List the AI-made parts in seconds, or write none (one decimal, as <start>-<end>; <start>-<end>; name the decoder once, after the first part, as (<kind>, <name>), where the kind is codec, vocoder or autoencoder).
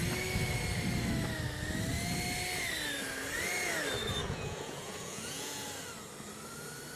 4.2-5.6 (vocoder, Vocos)